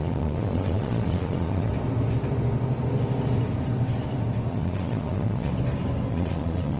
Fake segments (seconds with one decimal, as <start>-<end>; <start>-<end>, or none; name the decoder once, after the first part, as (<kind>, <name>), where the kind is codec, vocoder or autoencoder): 0.0-1.7 (vocoder, Vocos); 4.5-5.5; 6.1-6.8